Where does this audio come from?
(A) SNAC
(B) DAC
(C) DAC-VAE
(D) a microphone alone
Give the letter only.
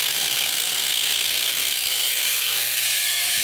A